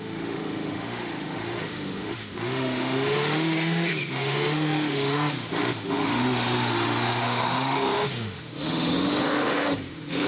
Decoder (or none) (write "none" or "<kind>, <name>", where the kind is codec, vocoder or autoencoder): autoencoder, DAC-VAE